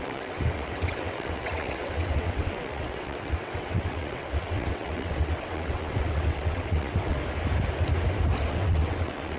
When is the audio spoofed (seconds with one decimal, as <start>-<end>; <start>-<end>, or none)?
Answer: 0.0-7.2; 8.5-9.4